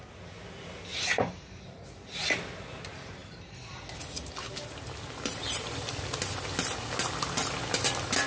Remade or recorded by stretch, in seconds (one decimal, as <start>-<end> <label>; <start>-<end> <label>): 0.0-0.9 recorded; 0.9-1.5 remade; 1.5-5.3 recorded; 5.3-5.9 remade; 5.9-8.3 recorded